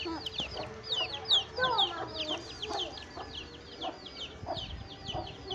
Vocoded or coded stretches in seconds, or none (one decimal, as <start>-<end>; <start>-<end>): none